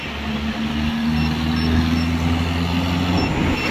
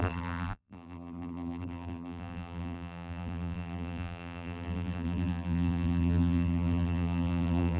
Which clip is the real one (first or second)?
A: first